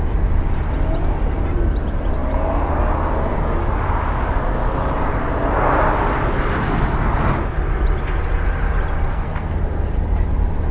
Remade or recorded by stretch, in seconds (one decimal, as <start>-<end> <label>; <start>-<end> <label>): 0.0-9.1 recorded; 9.1-9.6 remade; 9.6-10.7 recorded